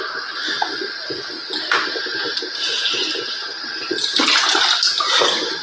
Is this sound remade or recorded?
recorded